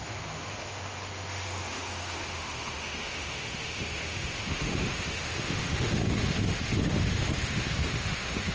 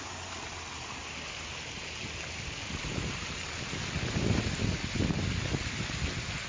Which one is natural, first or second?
second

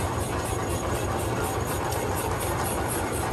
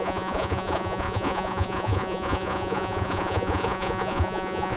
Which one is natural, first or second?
first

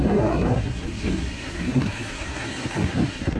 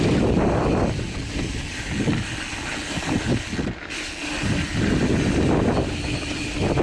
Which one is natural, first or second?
second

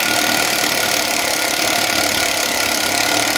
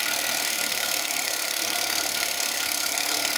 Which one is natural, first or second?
first